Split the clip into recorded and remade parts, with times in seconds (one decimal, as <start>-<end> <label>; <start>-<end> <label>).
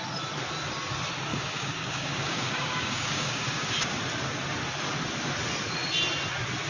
0.0-1.3 recorded; 1.3-4.0 remade; 4.0-6.7 recorded